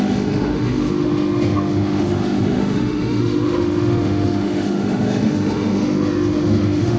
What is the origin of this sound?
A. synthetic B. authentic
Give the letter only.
A